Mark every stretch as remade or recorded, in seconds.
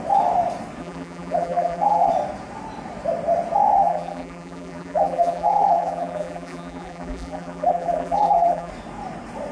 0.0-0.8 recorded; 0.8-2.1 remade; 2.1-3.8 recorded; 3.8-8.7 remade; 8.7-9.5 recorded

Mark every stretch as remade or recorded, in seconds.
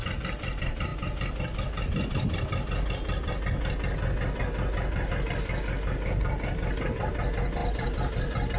0.0-7.6 recorded; 7.6-8.6 remade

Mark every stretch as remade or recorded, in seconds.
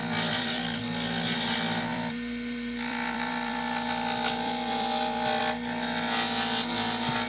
0.0-0.8 remade; 0.8-1.9 recorded; 1.9-5.4 remade; 5.4-7.3 recorded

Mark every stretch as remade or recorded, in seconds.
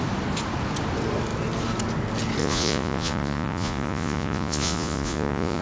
0.0-2.4 recorded; 2.4-5.6 remade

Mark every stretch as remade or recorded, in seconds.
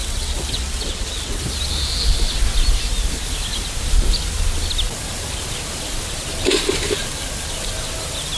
0.0-1.4 remade; 1.4-8.4 recorded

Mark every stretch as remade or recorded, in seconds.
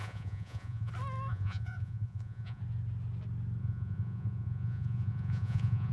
0.0-0.9 remade; 0.9-1.3 recorded; 1.3-2.6 remade; 2.6-3.6 recorded; 3.6-5.9 remade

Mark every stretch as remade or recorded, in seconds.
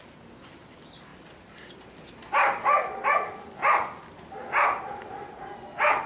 0.0-6.1 recorded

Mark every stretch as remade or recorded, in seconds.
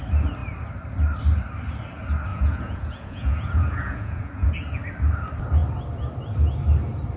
0.0-2.3 recorded; 2.3-4.5 remade; 4.5-7.2 recorded